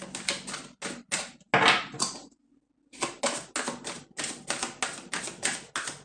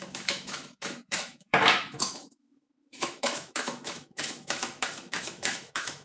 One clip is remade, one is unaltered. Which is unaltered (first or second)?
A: first